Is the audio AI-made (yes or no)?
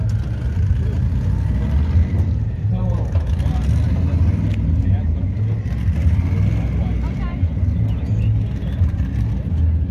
no